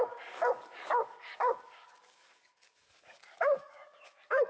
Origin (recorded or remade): remade